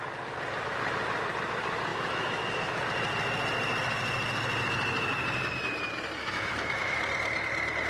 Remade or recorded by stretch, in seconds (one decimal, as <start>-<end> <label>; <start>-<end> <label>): 0.0-1.9 recorded; 1.9-2.8 remade; 2.8-6.2 recorded; 6.2-7.0 remade; 7.0-7.9 recorded